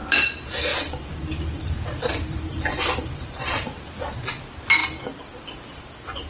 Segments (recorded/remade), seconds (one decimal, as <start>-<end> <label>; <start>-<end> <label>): 0.0-0.7 recorded; 0.7-1.7 remade; 1.7-2.5 recorded; 2.5-3.8 remade; 3.8-6.3 recorded